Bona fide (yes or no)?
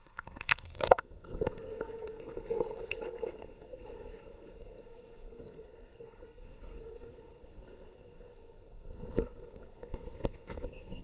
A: no